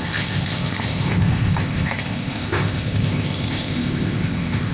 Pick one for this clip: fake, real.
fake